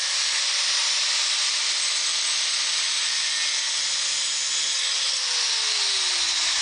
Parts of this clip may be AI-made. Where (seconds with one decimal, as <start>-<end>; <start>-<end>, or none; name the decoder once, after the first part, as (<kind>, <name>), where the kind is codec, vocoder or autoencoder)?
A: none